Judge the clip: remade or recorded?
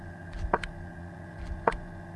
remade